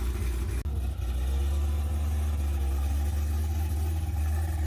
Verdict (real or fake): real